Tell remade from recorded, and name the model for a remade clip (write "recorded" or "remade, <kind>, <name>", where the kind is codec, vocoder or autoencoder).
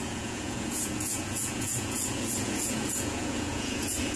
remade, vocoder, Vocos